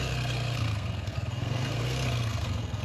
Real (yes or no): no